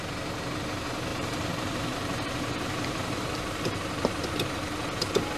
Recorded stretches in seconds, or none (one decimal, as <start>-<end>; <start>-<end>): 0.0-1.1; 4.3-5.4